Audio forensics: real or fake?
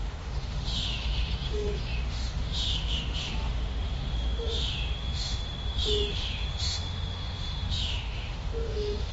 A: fake